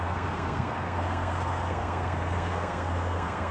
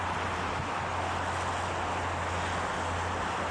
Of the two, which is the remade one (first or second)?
first